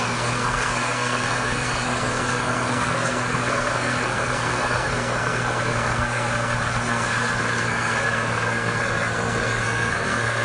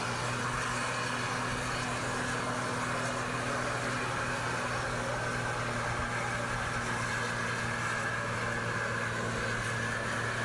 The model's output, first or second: first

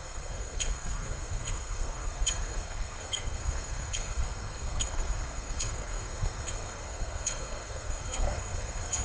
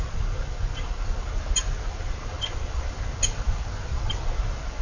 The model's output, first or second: first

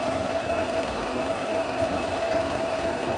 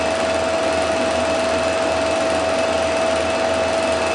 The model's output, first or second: first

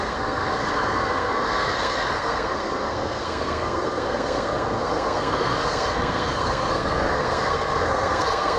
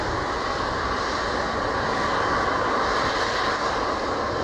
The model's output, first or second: first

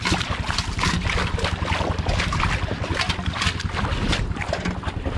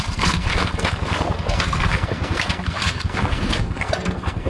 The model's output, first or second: second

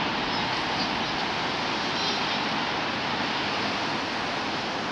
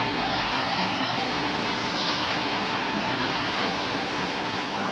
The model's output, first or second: second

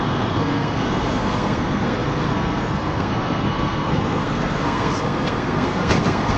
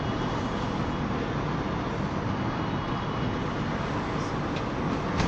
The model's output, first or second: first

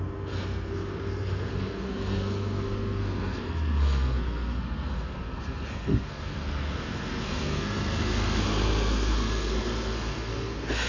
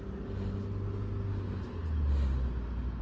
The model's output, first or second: first